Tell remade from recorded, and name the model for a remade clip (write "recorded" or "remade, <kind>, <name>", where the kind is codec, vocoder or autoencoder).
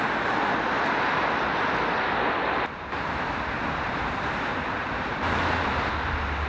recorded